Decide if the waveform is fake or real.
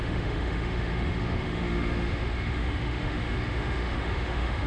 fake